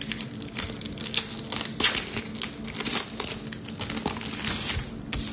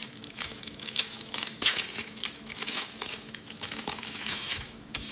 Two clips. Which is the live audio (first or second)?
first